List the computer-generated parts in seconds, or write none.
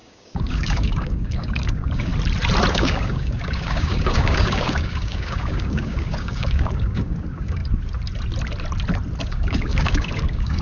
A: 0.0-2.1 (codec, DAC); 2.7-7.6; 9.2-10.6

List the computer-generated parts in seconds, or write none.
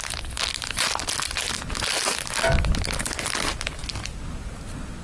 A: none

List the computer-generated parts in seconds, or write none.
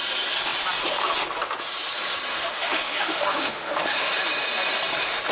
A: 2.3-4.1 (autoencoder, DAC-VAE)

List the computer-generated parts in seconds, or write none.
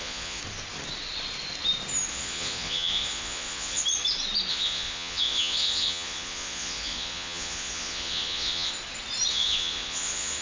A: 0.0-0.4 (vocoder, Vocos); 2.1-3.8; 4.5-8.7; 9.3-10.4